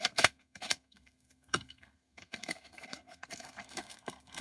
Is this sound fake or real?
fake